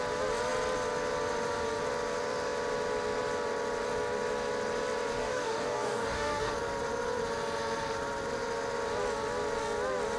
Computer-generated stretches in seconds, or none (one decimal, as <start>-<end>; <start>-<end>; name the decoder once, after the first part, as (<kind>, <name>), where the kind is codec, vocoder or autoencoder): 5.2-6.5 (codec, DAC)